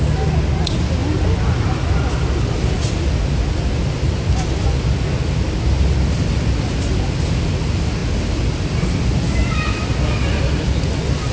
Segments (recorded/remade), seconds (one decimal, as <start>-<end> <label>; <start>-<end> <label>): 0.0-11.3 recorded